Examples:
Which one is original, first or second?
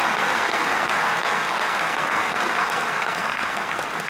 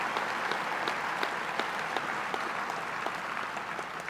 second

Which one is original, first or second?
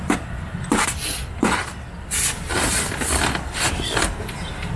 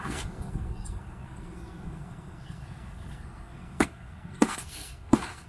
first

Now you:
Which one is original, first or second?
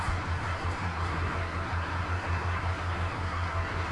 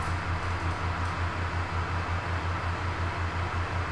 second